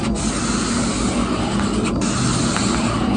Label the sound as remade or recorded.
recorded